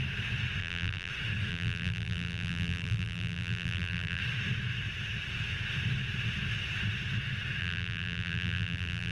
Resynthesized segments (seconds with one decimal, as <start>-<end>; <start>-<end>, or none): 0.6-1.1; 1.5-4.2; 7.6-9.1